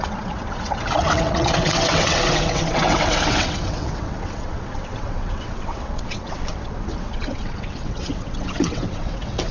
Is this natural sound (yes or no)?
no